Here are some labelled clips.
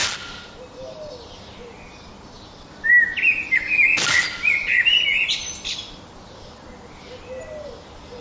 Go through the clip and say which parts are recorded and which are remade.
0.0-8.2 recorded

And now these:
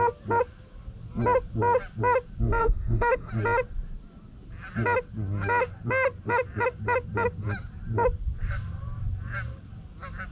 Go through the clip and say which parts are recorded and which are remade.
0.0-2.6 recorded; 2.6-3.3 remade; 3.3-10.3 recorded

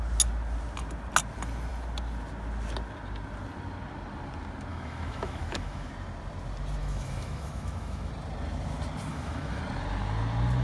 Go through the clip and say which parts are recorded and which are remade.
0.0-4.7 recorded; 4.7-5.9 remade; 5.9-6.8 recorded; 6.8-8.1 remade; 8.1-9.1 recorded; 9.1-9.6 remade; 9.6-10.6 recorded

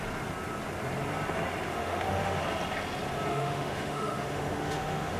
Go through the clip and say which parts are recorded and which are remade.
0.0-1.7 recorded; 1.7-2.4 remade; 2.4-3.3 recorded; 3.3-5.2 remade